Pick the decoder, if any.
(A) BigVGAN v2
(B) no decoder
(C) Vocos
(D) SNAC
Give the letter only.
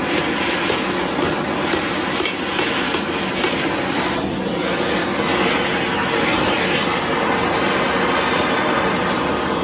B